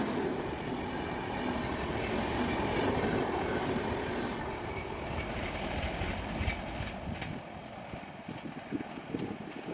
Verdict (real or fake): real